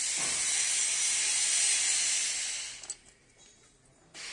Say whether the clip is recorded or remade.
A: recorded